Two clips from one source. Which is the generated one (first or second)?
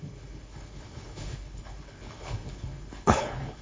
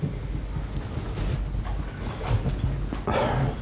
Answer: first